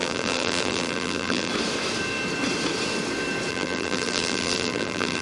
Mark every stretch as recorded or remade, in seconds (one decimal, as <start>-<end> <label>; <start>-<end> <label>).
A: 0.0-1.5 remade; 1.5-3.5 recorded; 3.5-5.2 remade